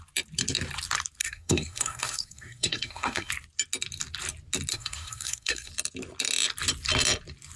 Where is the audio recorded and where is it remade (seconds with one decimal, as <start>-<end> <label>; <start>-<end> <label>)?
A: 0.0-1.2 recorded; 1.2-3.3 remade; 3.3-4.7 recorded; 4.7-5.7 remade; 5.7-7.6 recorded